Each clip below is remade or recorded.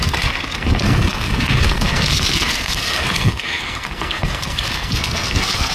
remade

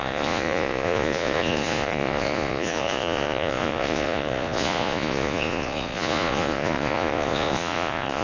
remade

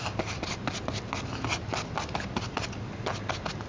recorded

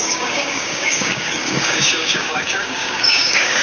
remade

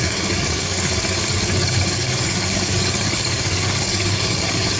remade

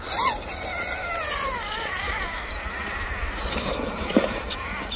recorded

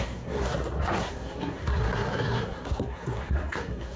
remade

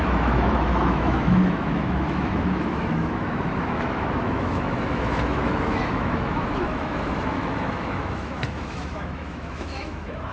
remade